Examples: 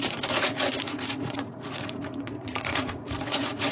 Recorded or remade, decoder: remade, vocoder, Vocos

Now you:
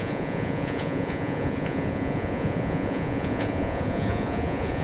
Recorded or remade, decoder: remade, vocoder, Vocos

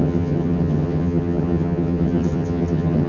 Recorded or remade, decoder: remade, vocoder, HiFi-GAN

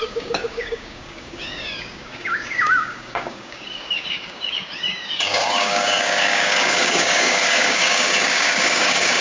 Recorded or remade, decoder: remade, codec, DAC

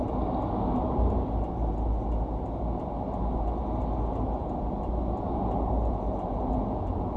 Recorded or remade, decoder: recorded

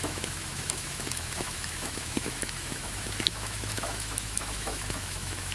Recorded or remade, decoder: remade, autoencoder, DAC-VAE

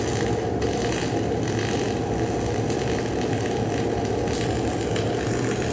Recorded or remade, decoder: recorded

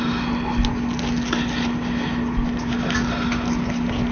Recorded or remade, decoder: recorded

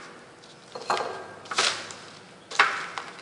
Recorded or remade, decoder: recorded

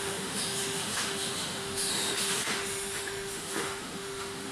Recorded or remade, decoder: remade, autoencoder, DAC-VAE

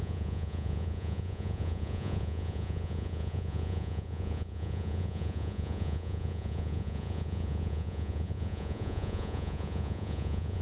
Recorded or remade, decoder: remade, vocoder, Vocos